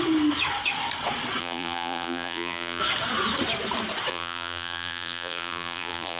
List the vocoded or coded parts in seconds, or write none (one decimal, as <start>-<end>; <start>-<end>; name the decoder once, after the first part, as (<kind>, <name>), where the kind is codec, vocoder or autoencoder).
1.4-2.8 (vocoder, BigVGAN v2); 4.1-6.2